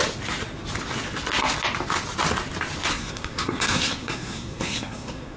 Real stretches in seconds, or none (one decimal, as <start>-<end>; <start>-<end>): 0.0-2.9